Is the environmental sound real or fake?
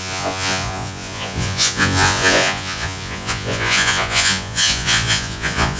fake